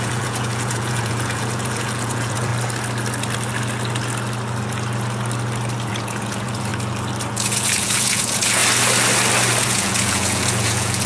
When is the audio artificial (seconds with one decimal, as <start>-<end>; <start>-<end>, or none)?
0.0-2.5; 5.9-6.7; 7.3-8.6; 9.7-11.1